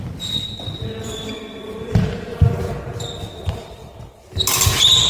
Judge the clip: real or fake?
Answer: real